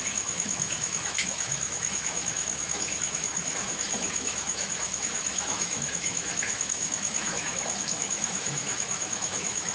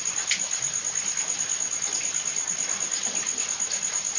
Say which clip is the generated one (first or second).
first